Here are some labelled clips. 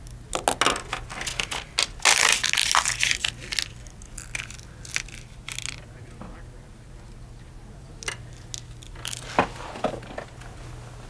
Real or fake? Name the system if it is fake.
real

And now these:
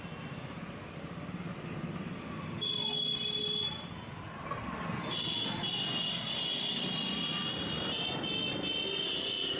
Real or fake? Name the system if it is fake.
real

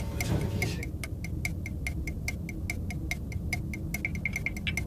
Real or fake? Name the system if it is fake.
real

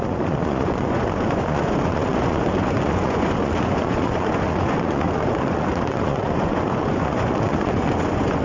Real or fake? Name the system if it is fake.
fake, vocoder, Vocos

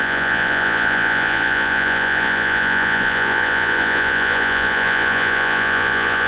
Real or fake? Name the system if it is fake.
fake, vocoder, Vocos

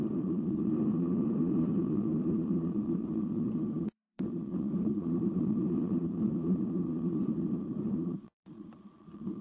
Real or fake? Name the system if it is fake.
fake, vocoder, Vocos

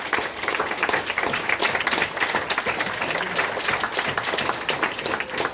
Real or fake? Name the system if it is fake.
real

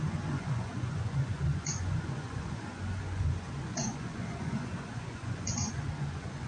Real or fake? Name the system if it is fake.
fake, vocoder, Vocos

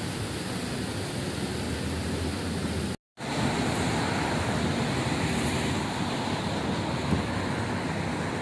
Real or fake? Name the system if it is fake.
real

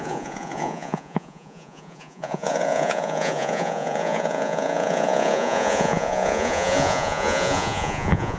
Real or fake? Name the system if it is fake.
fake, vocoder, Vocos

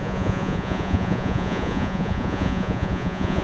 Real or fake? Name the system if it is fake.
fake, vocoder, Vocos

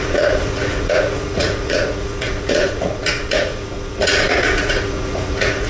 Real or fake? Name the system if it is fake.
fake, vocoder, Vocos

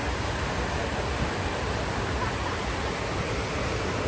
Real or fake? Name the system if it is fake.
real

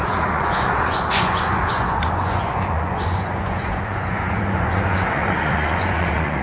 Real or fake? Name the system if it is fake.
fake, vocoder, Vocos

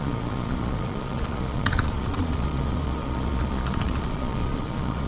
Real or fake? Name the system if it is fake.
fake, vocoder, Vocos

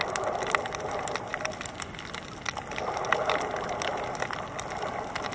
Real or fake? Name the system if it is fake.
real